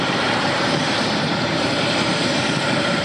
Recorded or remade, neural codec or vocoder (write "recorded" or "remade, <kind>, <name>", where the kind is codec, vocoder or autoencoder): remade, vocoder, BigVGAN v2